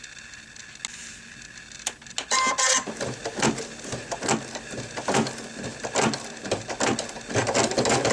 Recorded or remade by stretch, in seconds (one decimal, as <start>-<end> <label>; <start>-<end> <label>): 0.0-8.1 recorded